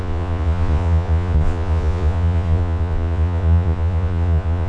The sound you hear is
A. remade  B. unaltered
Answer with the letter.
A